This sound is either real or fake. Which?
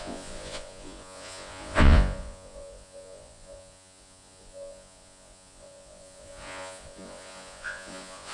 fake